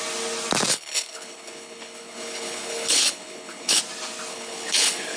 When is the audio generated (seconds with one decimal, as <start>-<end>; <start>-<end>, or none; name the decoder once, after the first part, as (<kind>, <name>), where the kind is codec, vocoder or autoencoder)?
0.7-3.8 (codec, HILCodec); 4.3-5.2